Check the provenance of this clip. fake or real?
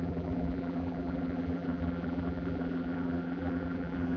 fake